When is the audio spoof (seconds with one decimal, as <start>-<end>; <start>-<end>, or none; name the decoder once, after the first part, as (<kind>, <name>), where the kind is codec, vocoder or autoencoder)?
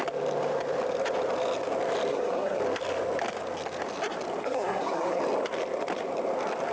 2.1-2.6 (codec, SNAC); 4.4-5.2